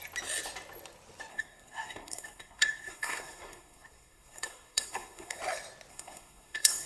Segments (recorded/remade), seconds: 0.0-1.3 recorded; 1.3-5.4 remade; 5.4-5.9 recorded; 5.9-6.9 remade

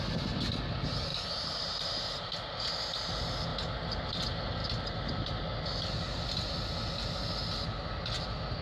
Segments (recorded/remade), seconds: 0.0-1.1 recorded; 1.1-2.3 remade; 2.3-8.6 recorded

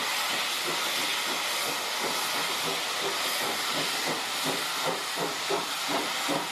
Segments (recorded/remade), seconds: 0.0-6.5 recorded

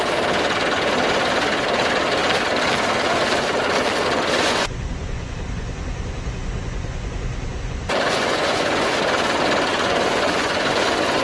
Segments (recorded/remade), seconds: 0.0-4.4 recorded; 4.4-9.0 remade; 9.0-9.7 recorded; 9.7-11.2 remade

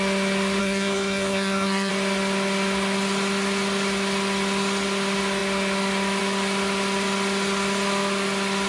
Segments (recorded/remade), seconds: 0.0-0.6 recorded; 0.6-1.9 remade; 1.9-8.7 recorded

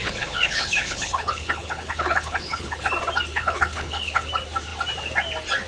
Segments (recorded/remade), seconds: 0.0-2.9 remade; 2.9-3.3 recorded; 3.3-4.3 remade; 4.3-5.7 recorded

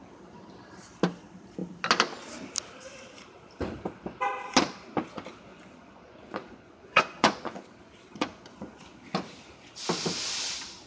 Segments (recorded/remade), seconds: 0.0-5.5 recorded; 5.5-7.6 remade; 7.6-8.1 recorded; 8.1-8.8 remade; 8.8-10.9 recorded

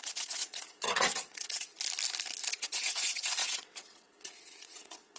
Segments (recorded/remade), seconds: 0.0-1.7 remade; 1.7-2.5 recorded; 2.5-5.2 remade